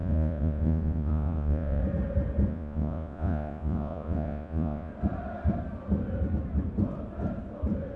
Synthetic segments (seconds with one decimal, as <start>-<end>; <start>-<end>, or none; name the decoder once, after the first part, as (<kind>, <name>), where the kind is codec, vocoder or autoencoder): 0.0-1.8 (vocoder, Vocos); 2.5-4.9